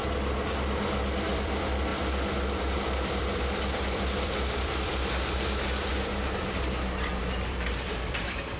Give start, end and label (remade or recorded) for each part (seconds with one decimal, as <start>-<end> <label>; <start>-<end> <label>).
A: 0.0-1.3 recorded; 1.3-1.9 remade; 1.9-2.6 recorded; 2.6-8.6 remade